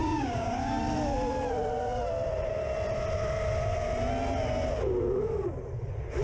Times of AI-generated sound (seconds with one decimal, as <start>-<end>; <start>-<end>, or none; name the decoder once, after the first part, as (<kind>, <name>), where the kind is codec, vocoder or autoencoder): 0.0-0.8 (codec, DAC)